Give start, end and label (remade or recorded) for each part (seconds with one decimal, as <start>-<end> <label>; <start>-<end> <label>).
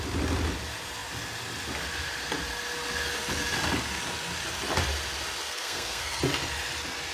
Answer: 0.0-5.4 recorded; 5.4-6.2 remade; 6.2-7.1 recorded